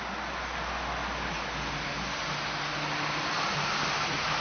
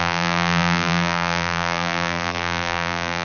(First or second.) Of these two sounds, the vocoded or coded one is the second